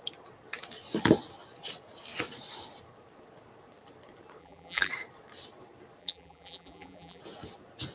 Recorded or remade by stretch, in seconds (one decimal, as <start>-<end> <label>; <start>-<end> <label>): 0.0-4.4 recorded; 4.4-4.9 remade; 4.9-6.0 recorded; 6.0-7.2 remade; 7.2-7.9 recorded